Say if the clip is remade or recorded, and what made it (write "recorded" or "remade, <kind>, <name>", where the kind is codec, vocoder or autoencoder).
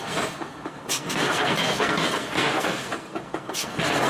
remade, codec, SNAC